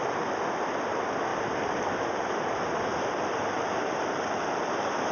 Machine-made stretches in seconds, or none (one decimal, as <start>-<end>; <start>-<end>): 1.3-1.8; 2.9-5.1